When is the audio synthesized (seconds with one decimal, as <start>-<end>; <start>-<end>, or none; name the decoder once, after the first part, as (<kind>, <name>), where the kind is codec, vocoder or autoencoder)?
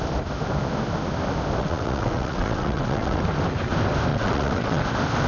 1.6-3.2 (vocoder, WaveNeXt); 4.1-4.8